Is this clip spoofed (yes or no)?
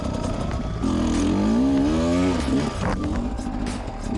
no